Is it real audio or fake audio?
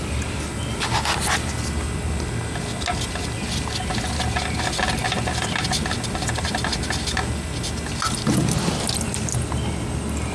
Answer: real